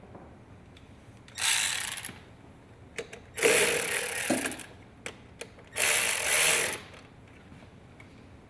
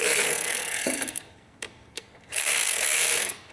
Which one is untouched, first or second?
first